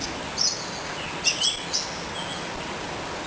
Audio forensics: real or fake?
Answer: real